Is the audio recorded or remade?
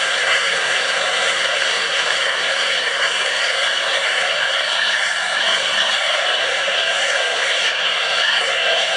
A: remade